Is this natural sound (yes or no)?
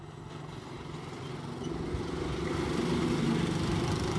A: yes